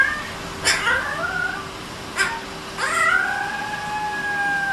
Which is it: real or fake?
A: real